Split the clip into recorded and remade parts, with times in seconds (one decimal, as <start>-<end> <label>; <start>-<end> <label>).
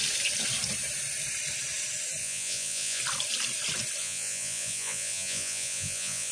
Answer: 0.0-2.2 recorded; 2.2-3.0 remade; 3.0-4.0 recorded; 4.0-6.3 remade